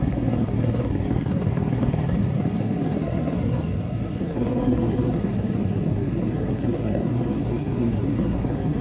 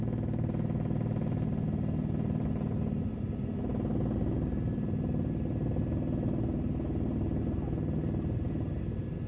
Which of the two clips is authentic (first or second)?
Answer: second